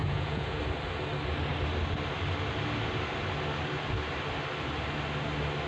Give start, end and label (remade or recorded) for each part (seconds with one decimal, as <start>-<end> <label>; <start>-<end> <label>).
0.0-0.6 remade; 0.6-5.7 recorded